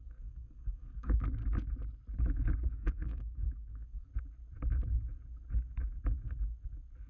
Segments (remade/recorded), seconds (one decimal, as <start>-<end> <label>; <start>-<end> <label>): 0.0-1.4 remade; 1.4-2.7 recorded; 2.7-4.1 remade; 4.1-7.1 recorded